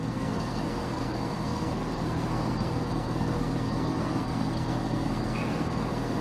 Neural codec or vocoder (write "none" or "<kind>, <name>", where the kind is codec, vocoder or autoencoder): codec, SNAC